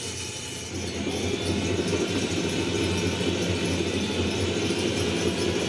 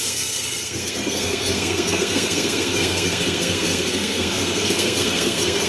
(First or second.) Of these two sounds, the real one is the first